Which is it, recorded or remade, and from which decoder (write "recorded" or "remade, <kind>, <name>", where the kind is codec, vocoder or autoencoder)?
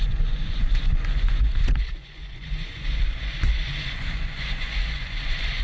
remade, vocoder, Vocos